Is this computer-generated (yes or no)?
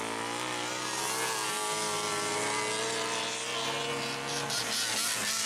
no